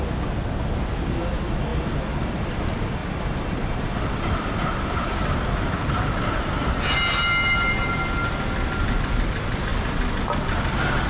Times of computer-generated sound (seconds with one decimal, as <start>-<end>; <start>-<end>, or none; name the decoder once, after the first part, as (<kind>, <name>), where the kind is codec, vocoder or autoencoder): 1.7-2.5 (vocoder, BigVGAN v2); 3.0-5.9